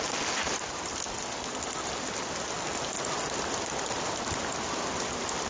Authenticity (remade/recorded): recorded